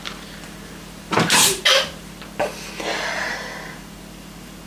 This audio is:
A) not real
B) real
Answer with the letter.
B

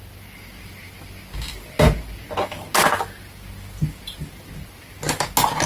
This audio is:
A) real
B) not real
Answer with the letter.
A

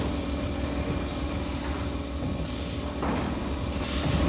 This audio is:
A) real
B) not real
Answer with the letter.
A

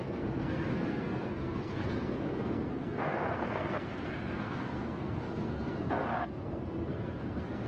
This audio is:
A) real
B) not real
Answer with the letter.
B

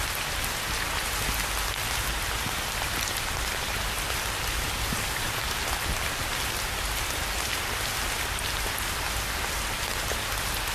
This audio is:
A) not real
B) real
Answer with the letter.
B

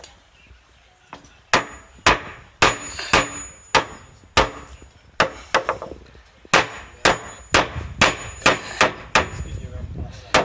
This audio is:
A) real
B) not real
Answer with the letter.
A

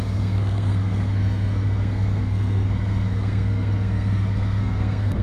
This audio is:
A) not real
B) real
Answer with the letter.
A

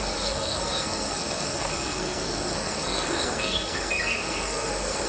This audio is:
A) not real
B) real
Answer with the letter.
A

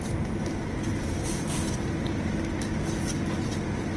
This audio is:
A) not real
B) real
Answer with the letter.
B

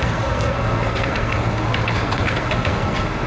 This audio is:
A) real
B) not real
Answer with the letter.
B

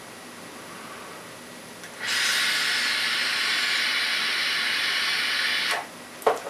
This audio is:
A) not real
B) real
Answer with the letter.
B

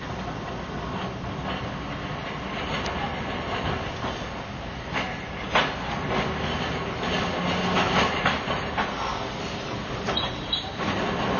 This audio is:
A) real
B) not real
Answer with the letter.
A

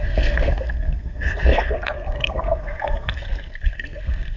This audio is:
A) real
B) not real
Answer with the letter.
B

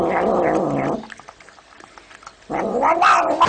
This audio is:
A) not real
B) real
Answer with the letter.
B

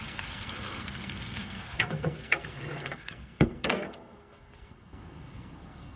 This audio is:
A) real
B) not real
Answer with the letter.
B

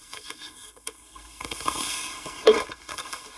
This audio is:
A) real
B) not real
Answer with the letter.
B